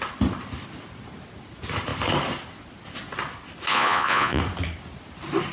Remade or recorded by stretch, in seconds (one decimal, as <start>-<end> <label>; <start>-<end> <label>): 0.0-3.7 recorded; 3.7-4.4 remade; 4.4-5.5 recorded